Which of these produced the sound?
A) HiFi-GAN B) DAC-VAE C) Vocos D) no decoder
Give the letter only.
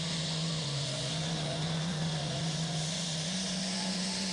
C